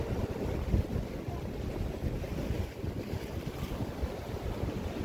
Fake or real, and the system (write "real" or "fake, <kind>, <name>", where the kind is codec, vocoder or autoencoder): real